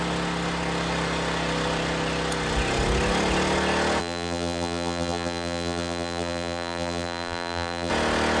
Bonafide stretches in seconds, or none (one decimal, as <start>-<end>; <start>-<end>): 0.0-4.0; 7.9-8.4

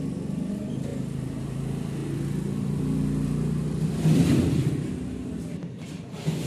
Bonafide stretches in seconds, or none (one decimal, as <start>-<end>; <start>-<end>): none